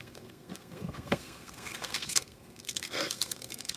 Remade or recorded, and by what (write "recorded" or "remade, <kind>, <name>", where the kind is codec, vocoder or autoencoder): remade, codec, SNAC